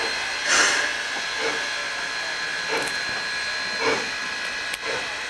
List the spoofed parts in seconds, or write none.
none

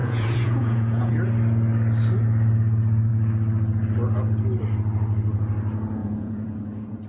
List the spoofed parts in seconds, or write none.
0.0-1.1 (vocoder, Vocos); 6.0-7.1

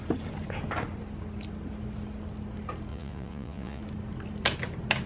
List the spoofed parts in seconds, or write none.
2.9-3.8 (vocoder, Vocos)

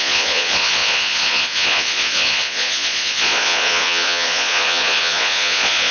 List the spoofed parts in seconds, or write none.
0.0-5.9 (vocoder, Vocos)

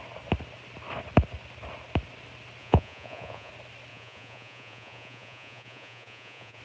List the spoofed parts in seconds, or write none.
2.6-3.5 (vocoder, Vocos); 3.9-6.6